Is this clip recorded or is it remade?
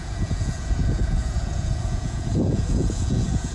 remade